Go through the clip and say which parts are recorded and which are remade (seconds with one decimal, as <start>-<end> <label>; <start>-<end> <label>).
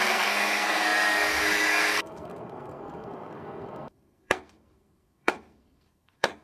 0.0-6.4 remade